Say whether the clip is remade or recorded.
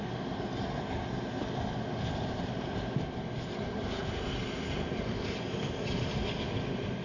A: recorded